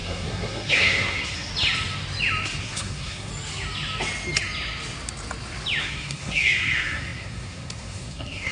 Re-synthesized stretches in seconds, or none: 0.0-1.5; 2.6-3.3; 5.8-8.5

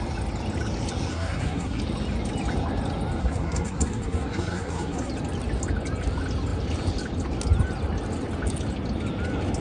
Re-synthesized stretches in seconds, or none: 1.1-1.8; 3.2-5.1